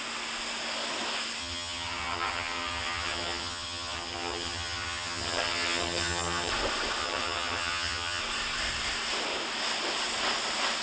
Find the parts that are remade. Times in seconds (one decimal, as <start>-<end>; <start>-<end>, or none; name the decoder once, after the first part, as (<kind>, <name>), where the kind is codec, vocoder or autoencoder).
1.4-6.5 (vocoder, HiFi-GAN); 7.0-8.2